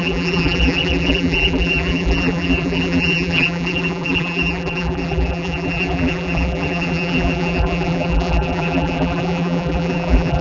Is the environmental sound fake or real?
fake